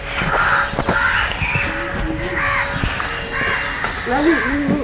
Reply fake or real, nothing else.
real